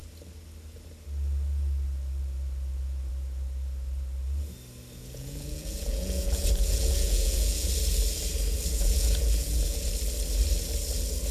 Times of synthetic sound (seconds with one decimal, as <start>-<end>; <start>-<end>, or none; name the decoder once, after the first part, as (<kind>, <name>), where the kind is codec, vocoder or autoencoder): 5.0-7.7 (vocoder, Vocos); 8.7-9.9